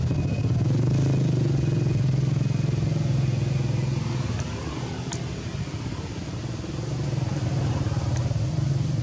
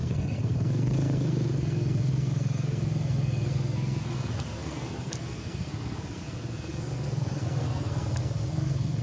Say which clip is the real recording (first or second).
first